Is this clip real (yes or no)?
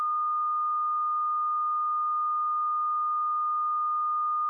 yes